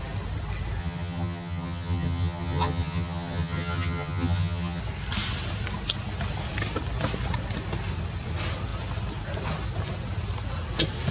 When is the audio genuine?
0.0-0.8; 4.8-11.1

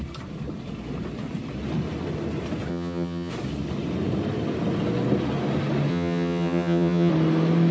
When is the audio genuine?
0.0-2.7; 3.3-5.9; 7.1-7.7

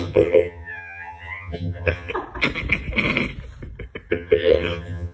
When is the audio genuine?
2.1-4.1

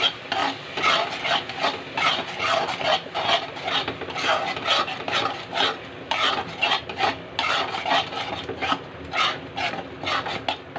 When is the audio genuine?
0.0-10.8

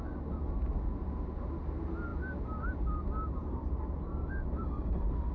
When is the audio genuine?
0.0-5.3

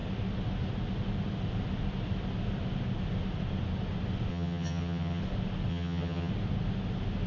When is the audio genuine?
0.0-4.3; 5.2-5.7; 6.3-7.3

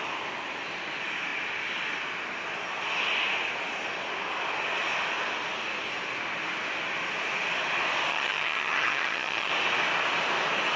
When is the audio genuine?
0.0-8.1; 9.5-10.8

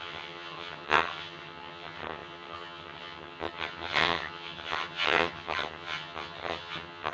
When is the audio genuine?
none